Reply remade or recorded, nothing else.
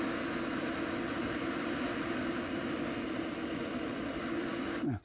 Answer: recorded